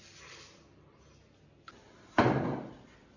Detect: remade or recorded recorded